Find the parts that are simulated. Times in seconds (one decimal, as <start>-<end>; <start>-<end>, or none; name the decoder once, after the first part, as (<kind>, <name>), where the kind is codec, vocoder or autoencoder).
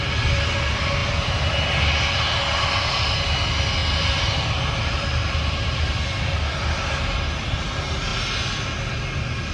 3.8-6.8 (vocoder, BigVGAN v2)